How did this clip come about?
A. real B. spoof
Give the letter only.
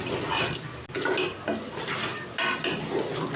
A